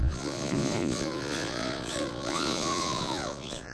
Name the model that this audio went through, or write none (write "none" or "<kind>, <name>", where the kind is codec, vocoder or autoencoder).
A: vocoder, Vocos